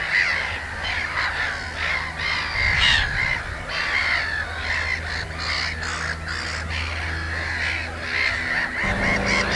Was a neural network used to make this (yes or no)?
no